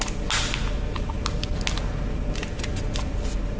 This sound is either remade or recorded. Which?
recorded